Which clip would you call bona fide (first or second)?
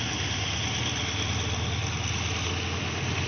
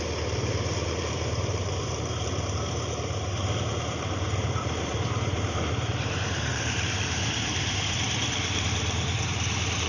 first